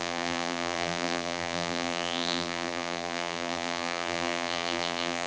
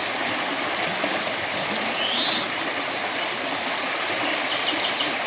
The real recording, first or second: second